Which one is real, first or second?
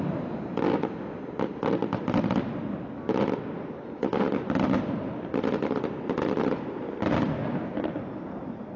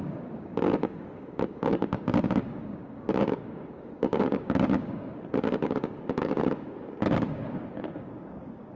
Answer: first